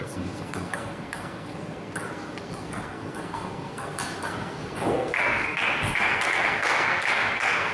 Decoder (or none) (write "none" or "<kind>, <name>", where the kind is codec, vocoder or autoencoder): codec, SNAC